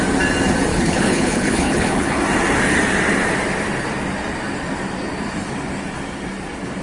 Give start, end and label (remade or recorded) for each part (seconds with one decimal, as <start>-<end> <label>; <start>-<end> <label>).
0.0-0.7 recorded; 0.7-2.2 remade; 2.2-6.8 recorded